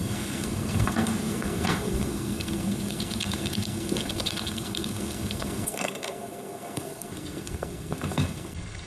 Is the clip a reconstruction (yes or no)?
yes